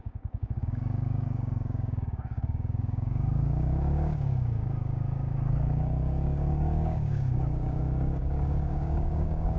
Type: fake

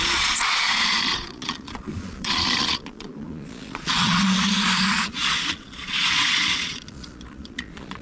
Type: fake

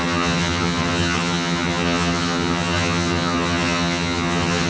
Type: fake